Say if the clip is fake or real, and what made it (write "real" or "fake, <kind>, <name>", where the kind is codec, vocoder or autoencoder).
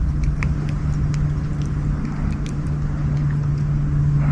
real